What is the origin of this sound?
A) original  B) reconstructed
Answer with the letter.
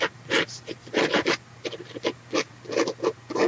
A